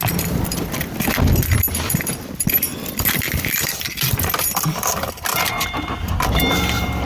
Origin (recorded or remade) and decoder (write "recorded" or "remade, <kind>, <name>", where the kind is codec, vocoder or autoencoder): remade, vocoder, BigVGAN v2